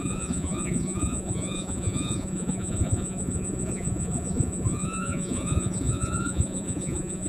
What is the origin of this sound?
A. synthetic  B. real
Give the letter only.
A